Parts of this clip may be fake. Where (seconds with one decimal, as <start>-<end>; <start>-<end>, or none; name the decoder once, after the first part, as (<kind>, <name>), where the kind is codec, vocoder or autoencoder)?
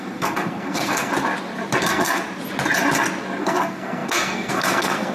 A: 0.0-1.1 (codec, SNAC); 1.8-2.2; 3.4-5.1